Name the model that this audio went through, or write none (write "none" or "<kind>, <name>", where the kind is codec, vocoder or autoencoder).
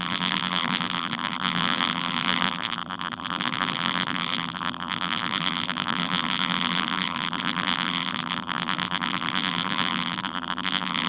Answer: vocoder, BigVGAN v2